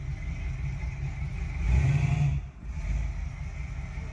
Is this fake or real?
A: real